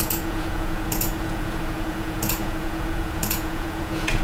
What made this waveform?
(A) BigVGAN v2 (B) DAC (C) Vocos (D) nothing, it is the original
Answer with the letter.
C